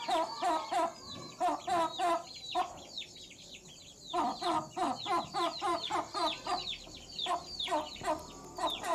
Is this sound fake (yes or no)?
no